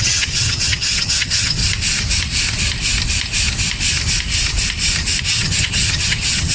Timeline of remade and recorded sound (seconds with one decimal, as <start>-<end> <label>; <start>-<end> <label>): 0.0-1.6 remade; 1.6-5.2 recorded; 5.2-6.5 remade